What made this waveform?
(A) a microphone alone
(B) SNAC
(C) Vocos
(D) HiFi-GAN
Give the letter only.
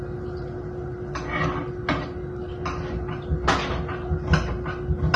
A